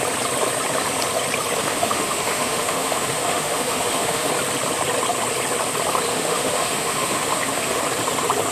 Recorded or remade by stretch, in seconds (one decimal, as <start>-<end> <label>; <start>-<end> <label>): 0.0-1.6 recorded; 1.6-4.3 remade; 4.3-6.1 recorded; 6.1-7.8 remade; 7.8-8.5 recorded

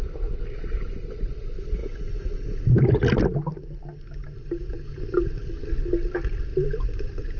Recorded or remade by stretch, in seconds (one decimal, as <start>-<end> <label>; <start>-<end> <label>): 0.0-6.5 recorded; 6.5-7.4 remade

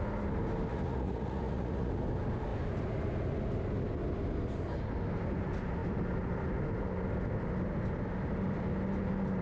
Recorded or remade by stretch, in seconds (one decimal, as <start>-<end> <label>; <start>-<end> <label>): 0.0-0.7 recorded; 0.7-1.9 remade; 1.9-9.4 recorded

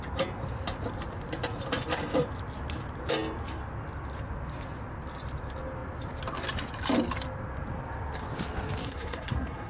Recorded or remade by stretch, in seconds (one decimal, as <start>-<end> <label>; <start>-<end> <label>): 0.0-8.8 recorded; 8.8-9.7 remade

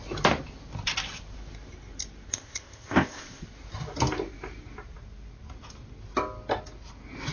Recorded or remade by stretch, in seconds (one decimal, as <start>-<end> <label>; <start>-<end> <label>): 0.0-2.3 recorded; 2.3-3.4 remade; 3.4-7.3 recorded

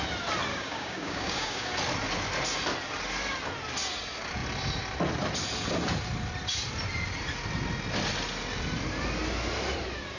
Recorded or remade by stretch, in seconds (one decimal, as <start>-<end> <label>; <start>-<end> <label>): 0.0-0.5 recorded; 0.5-1.7 remade; 1.7-10.2 recorded